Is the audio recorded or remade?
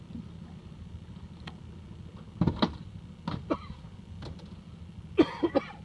recorded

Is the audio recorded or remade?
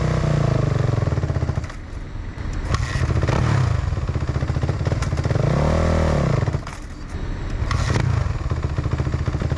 recorded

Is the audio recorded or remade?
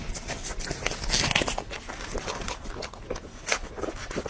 recorded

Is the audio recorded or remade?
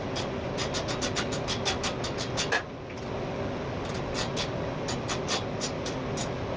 recorded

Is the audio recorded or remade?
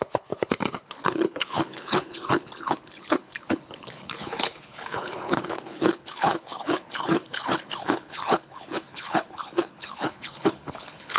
remade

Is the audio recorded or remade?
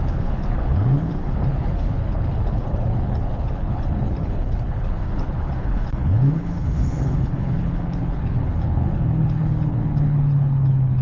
remade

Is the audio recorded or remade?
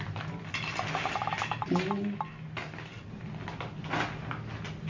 recorded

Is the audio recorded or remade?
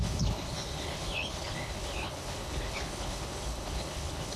remade